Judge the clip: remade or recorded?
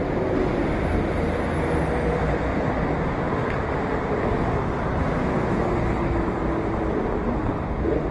recorded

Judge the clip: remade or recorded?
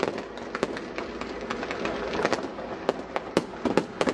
recorded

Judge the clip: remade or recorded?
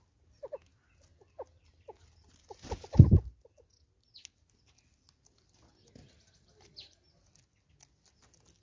recorded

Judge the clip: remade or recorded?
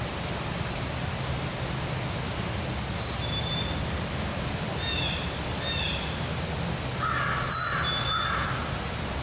recorded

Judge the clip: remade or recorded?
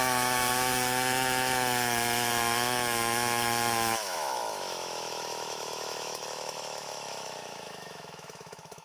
remade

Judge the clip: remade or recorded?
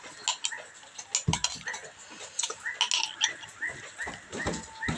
recorded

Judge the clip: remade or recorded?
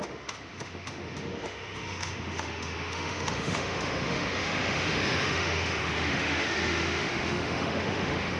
remade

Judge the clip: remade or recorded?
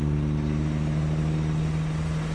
recorded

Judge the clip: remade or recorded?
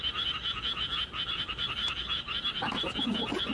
recorded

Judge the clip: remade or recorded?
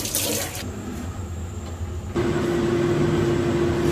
recorded